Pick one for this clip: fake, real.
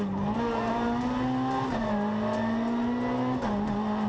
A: real